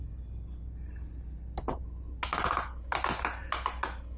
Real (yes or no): yes